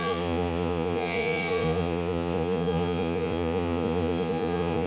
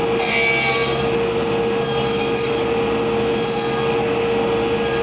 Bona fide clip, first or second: second